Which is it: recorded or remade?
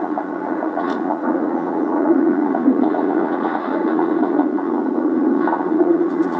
remade